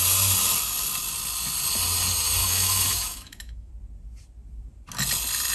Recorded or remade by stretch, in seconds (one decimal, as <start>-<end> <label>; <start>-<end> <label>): 0.0-2.4 recorded; 2.4-3.7 remade; 3.7-5.5 recorded